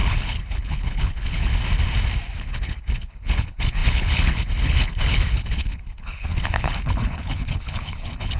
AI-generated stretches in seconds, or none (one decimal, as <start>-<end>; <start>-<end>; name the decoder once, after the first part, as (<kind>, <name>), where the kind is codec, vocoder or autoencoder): 0.0-1.5 (codec, HILCodec); 2.4-8.4